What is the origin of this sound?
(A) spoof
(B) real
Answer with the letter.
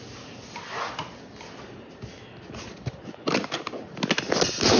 B